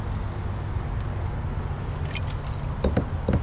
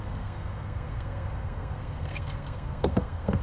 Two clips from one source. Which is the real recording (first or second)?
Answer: first